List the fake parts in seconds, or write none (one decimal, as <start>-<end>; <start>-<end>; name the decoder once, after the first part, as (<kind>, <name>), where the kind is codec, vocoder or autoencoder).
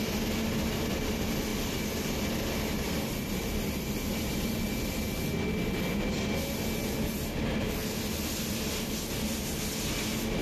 none